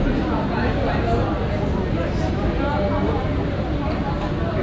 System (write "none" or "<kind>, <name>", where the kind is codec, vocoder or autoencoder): none